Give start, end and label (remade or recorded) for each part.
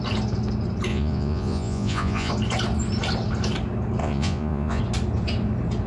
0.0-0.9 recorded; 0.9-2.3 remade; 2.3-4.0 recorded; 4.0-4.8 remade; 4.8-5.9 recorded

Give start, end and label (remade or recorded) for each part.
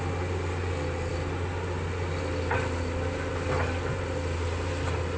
0.0-5.2 recorded